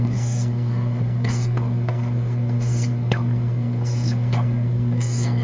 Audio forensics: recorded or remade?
remade